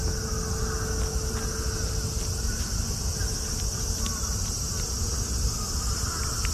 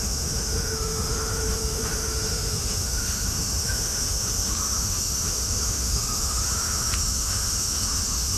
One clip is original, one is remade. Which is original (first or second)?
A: first